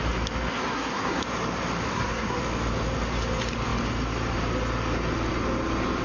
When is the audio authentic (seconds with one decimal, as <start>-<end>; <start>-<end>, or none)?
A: 0.0-0.7; 1.2-1.9; 2.4-6.0